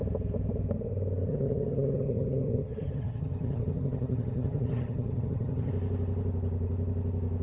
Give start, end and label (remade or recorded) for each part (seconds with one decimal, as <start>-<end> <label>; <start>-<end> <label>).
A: 0.0-1.3 recorded; 1.3-5.7 remade; 5.7-7.4 recorded